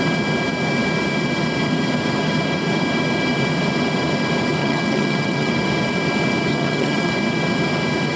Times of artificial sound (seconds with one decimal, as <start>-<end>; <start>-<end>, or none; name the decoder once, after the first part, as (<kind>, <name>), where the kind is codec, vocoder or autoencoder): 4.6-5.5 (vocoder, HiFi-GAN); 6.5-7.1